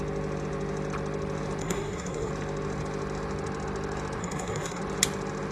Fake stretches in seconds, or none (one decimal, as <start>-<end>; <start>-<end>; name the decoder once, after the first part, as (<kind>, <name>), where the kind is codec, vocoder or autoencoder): 1.6-2.3 (codec, SNAC); 4.2-4.8